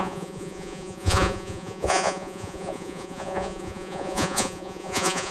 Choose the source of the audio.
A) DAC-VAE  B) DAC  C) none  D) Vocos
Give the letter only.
D